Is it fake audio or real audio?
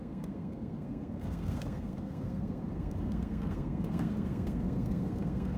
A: fake